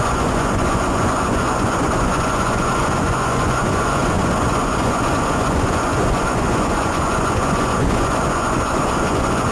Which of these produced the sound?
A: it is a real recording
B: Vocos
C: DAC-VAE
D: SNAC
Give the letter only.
B